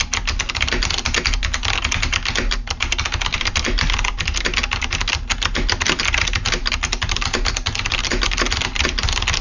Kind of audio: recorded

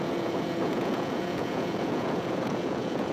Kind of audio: remade